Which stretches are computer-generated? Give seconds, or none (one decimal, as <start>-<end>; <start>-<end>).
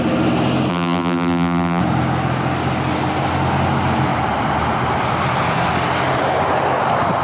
0.7-1.8